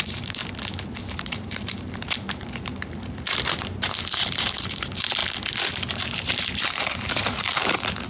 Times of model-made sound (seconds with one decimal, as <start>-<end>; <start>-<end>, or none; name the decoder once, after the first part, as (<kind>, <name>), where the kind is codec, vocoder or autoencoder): 0.0-0.4 (vocoder, BigVGAN v2); 1.2-5.2; 5.9-8.1